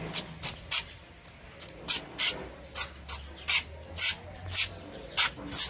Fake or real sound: real